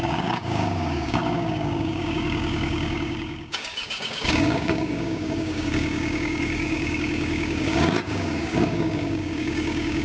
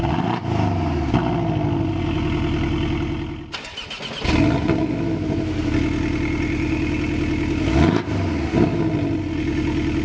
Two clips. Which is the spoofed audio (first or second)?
first